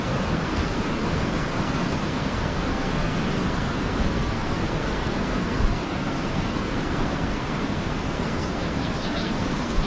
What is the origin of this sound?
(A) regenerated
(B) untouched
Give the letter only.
A